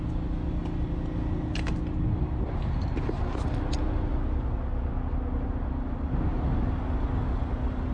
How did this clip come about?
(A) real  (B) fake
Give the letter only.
A